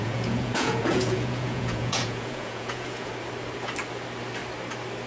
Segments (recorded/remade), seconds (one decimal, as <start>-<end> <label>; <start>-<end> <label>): 0.0-3.1 remade; 3.1-5.1 recorded